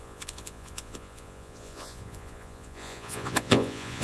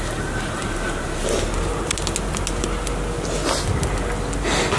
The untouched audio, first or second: second